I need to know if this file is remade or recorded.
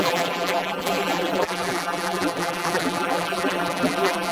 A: remade